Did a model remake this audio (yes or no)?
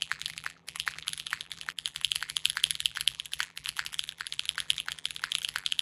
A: yes